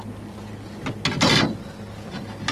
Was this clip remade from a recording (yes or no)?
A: no